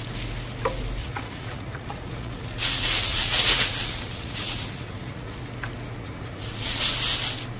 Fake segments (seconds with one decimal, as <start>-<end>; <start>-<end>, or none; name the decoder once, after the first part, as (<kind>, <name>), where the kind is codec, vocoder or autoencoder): 1.0-5.4 (vocoder, Vocos); 6.0-6.8